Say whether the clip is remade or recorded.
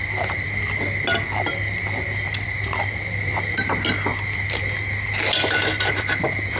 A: recorded